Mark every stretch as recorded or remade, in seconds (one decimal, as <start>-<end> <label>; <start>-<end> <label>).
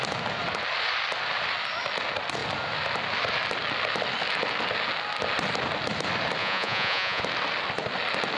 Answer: 0.0-6.4 recorded; 6.4-7.2 remade; 7.2-8.4 recorded